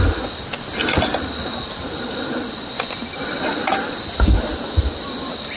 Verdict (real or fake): real